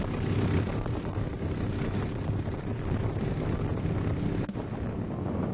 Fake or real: real